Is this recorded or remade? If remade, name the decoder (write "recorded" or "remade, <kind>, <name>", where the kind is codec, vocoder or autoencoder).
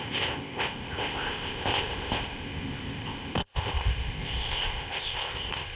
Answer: remade, codec, ZipCodec